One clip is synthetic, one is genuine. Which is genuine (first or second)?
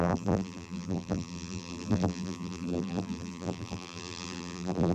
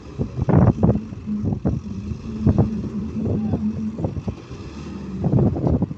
second